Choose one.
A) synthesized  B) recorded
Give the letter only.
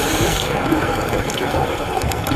A